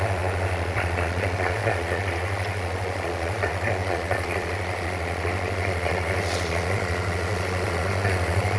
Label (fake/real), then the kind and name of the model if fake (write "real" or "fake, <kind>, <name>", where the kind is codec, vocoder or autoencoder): fake, vocoder, Vocos